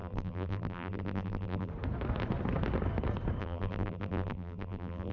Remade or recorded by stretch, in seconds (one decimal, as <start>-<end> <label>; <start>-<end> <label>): 0.0-1.7 remade; 1.7-3.4 recorded; 3.4-5.1 remade